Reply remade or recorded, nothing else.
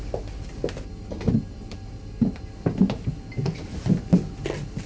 recorded